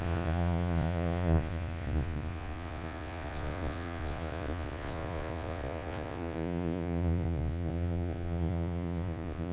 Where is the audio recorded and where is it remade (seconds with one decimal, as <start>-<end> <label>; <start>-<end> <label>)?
0.0-9.5 remade